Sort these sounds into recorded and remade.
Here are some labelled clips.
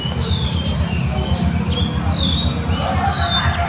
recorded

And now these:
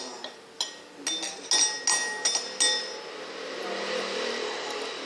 recorded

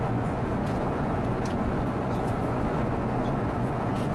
remade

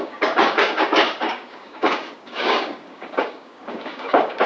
remade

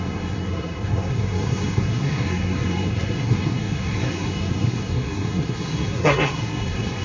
remade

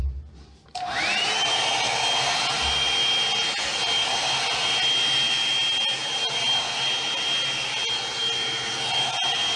recorded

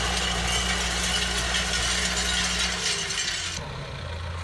recorded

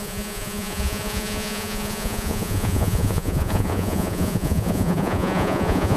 remade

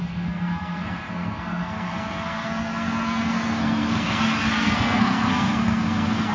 remade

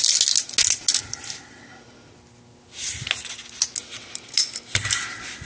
recorded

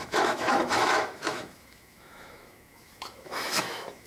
remade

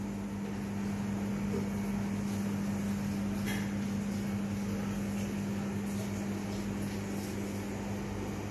recorded